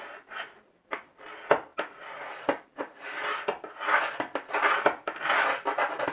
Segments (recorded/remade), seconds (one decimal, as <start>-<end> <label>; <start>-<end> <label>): 0.0-6.1 recorded